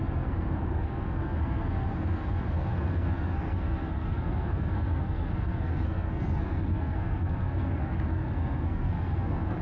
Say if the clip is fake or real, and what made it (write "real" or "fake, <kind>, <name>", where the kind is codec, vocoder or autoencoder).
fake, codec, SNAC